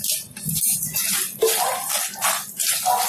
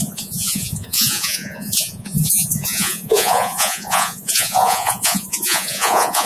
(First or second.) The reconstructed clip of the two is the second